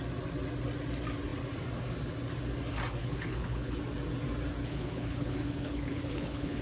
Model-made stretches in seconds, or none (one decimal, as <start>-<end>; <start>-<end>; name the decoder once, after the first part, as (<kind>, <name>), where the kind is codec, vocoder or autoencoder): 3.0-3.8 (codec, HILCodec); 4.6-6.6